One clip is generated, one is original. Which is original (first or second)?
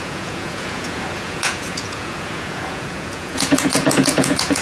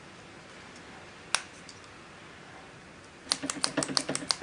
second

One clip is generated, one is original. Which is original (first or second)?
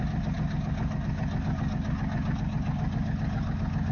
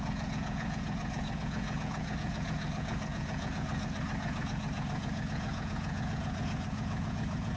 first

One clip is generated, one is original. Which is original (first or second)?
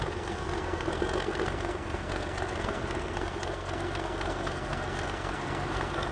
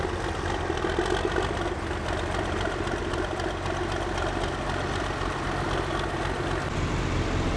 second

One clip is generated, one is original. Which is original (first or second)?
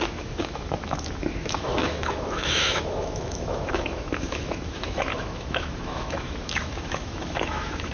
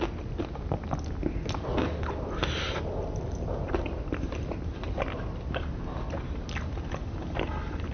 second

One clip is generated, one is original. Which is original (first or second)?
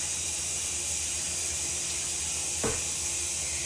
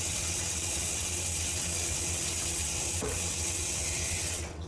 first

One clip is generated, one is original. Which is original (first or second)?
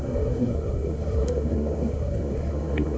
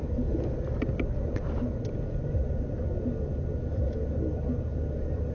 second